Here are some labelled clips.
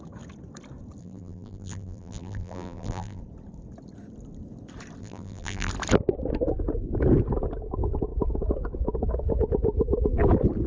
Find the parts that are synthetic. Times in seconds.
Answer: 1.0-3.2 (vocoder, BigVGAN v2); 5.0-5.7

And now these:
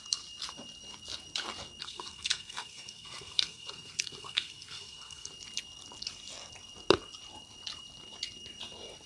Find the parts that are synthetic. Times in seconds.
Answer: 1.8-5.3 (codec, SNAC)

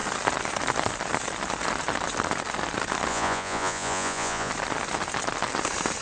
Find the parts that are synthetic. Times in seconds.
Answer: 3.1-4.5 (vocoder, Vocos)

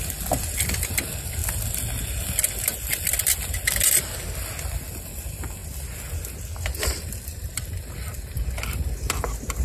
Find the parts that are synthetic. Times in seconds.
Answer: none